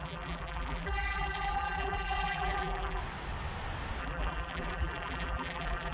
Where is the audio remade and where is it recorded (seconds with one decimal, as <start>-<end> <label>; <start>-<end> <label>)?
0.0-3.0 remade; 3.0-4.0 recorded; 4.0-5.9 remade